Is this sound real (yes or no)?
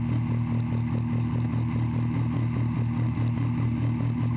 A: yes